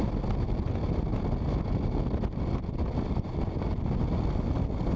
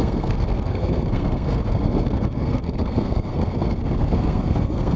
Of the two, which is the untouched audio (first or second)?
first